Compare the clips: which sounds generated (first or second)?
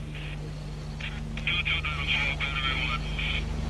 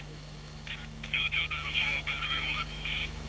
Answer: second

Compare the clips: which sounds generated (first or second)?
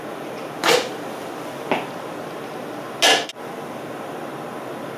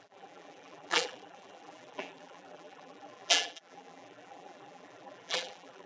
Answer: second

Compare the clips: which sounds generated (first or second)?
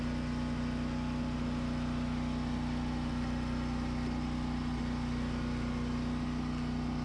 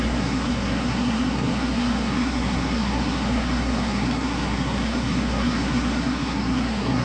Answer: second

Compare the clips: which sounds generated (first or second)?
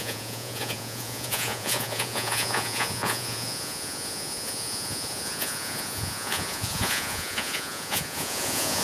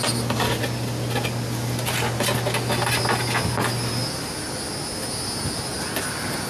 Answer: first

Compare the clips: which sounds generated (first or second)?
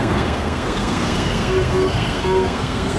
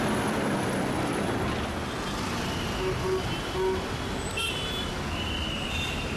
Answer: first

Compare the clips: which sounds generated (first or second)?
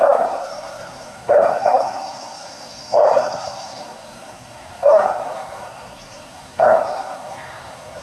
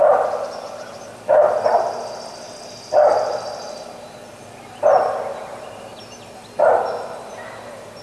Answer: first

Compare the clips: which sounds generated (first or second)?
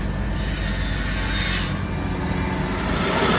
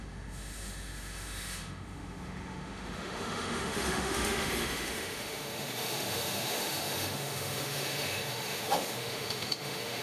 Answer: second